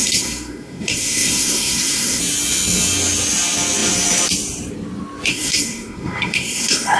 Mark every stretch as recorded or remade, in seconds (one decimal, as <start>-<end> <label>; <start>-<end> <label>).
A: 0.0-2.2 remade; 2.2-5.3 recorded; 5.3-7.0 remade